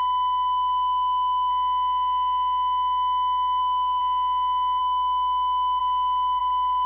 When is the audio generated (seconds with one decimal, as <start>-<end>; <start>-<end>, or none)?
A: 0.0-1.5; 3.6-4.0; 4.8-6.9